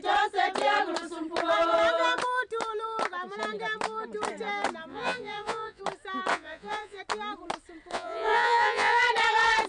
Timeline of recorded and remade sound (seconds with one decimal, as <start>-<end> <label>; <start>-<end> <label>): 0.0-4.9 recorded; 4.9-5.8 remade; 5.8-6.3 recorded; 6.3-7.0 remade; 7.0-7.9 recorded; 7.9-9.0 remade; 9.0-9.7 recorded